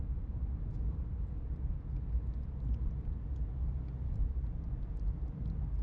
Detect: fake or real real